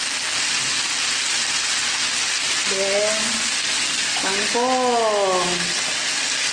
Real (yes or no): yes